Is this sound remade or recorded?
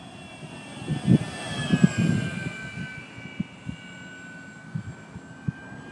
recorded